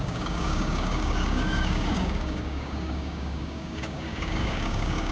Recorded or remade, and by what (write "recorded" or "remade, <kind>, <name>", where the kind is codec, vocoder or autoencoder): remade, codec, DAC